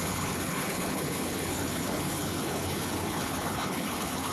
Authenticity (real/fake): fake